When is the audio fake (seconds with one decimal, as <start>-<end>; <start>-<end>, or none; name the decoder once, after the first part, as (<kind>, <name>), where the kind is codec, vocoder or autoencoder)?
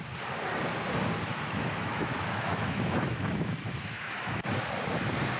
1.3-4.5 (autoencoder, DAC-VAE)